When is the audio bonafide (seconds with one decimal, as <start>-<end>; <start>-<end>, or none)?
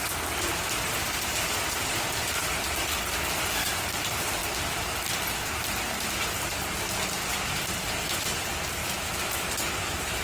0.0-8.8; 9.4-10.2